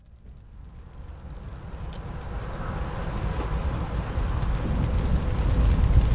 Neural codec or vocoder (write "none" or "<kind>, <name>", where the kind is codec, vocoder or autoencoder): none